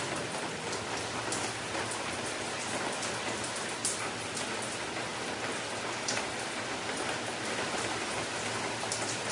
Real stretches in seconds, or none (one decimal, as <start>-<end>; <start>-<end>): 0.0-9.3